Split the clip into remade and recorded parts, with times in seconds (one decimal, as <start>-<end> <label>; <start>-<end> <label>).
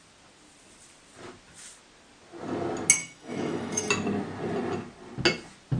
0.0-3.0 recorded; 3.0-3.8 remade; 3.8-5.8 recorded